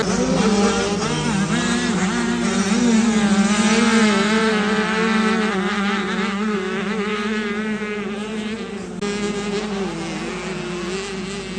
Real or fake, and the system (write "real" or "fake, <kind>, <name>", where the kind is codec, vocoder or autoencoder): real